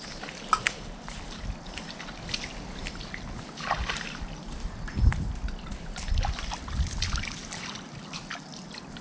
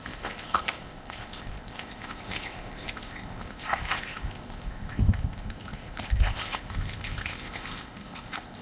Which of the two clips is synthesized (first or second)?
second